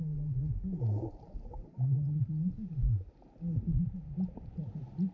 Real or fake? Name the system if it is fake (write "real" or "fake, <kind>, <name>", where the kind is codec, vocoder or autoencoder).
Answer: real